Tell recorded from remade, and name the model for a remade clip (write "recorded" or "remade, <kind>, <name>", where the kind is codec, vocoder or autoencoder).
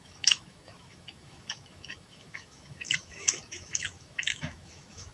remade, autoencoder, DAC-VAE